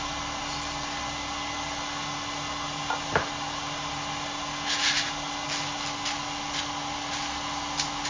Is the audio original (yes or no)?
yes